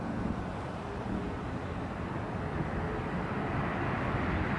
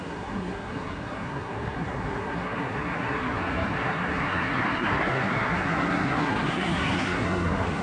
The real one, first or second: first